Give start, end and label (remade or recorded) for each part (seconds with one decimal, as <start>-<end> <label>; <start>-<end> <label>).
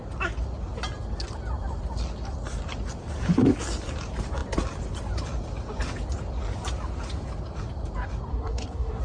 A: 0.0-8.3 recorded; 8.3-9.0 remade